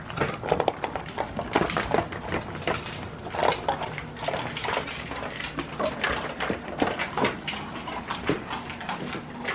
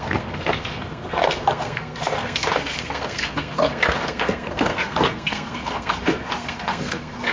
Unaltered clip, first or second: first